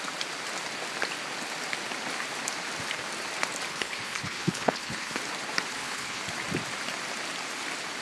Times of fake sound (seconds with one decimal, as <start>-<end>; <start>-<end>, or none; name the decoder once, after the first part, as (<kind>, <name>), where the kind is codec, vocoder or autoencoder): 3.7-5.2 (codec, HILCodec); 5.7-6.2